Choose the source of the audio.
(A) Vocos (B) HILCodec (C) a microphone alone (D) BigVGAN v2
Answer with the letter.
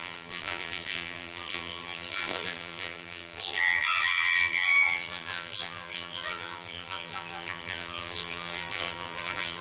D